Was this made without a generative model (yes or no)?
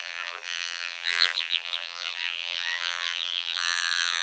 no